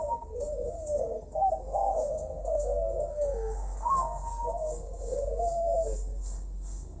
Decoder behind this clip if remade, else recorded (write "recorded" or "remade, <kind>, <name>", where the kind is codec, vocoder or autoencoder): remade, codec, SNAC